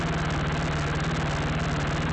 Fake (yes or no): no